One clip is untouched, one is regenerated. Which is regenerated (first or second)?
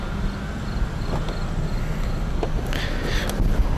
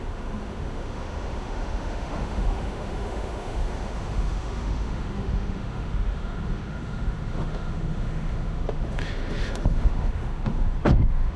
second